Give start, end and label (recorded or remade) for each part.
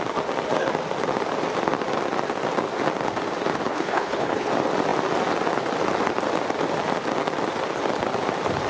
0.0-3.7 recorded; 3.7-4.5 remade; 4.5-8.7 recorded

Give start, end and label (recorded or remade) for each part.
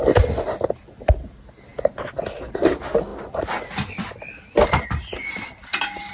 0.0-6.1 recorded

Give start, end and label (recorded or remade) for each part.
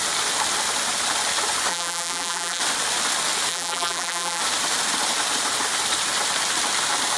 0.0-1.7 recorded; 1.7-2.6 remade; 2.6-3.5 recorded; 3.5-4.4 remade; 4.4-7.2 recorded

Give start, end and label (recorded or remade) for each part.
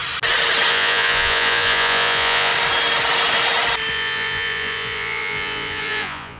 0.0-0.7 recorded; 0.7-2.5 remade; 2.5-3.9 recorded; 3.9-6.4 remade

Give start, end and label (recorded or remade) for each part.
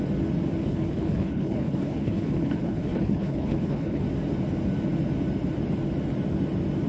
0.0-0.6 recorded; 0.6-4.0 remade; 4.0-6.9 recorded